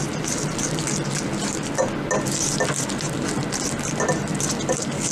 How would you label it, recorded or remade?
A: recorded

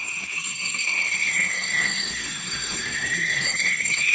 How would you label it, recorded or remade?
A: remade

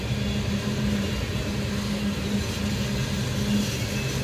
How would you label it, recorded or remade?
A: recorded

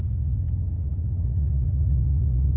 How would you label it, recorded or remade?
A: remade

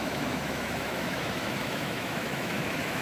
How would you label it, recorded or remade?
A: remade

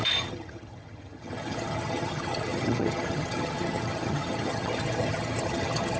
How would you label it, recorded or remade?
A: remade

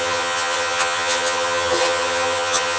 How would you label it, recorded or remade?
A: remade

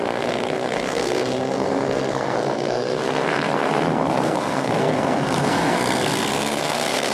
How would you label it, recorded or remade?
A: remade